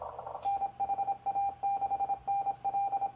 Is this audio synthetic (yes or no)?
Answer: no